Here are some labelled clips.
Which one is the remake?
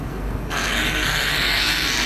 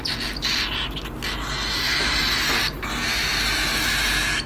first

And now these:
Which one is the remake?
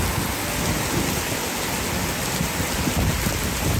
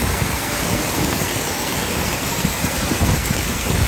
second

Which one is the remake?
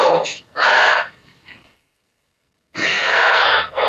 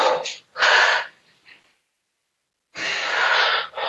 first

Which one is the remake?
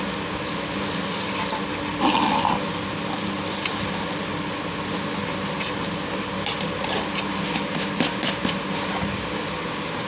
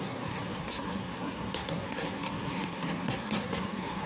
second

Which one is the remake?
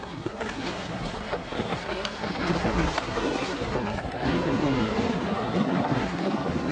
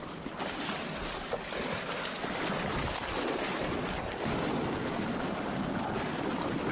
first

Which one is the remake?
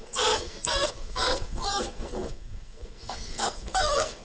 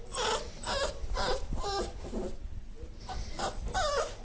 first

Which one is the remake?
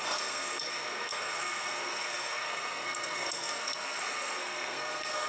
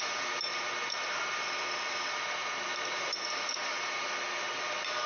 first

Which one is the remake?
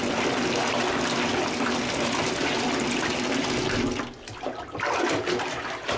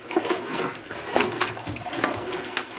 second